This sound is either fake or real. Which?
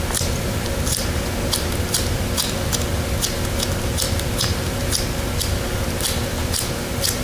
fake